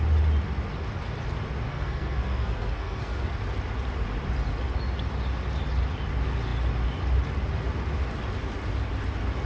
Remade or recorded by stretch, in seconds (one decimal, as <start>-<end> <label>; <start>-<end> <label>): 0.0-1.7 recorded; 1.7-3.3 remade; 3.3-9.5 recorded